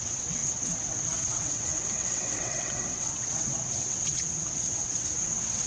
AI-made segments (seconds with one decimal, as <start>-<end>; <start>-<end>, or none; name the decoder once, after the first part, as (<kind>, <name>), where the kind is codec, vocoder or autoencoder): 0.0-5.7 (vocoder, WaveNeXt)